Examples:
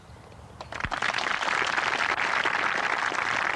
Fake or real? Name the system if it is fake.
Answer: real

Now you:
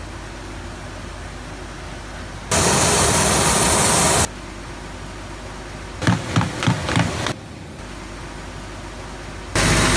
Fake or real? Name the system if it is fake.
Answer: real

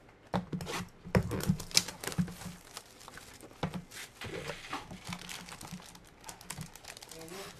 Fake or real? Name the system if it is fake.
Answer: real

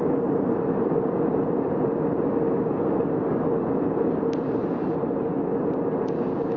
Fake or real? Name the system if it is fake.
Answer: real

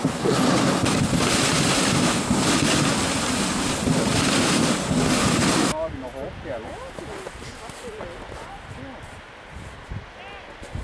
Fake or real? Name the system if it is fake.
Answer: real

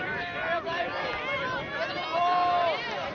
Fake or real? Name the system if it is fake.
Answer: real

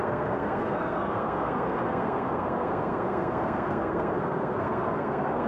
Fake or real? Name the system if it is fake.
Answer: fake, codec, SNAC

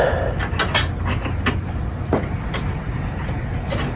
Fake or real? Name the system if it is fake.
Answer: real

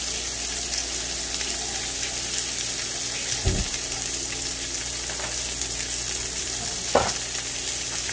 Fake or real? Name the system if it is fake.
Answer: real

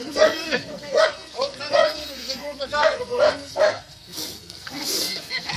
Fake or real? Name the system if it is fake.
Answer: fake, codec, SNAC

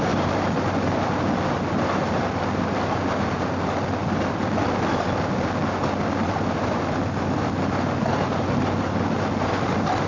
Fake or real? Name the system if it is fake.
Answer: real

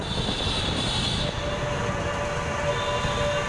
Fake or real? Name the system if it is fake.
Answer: real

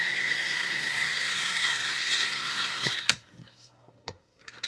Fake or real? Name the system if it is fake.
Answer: fake, codec, SNAC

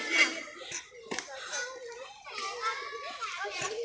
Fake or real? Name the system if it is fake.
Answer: real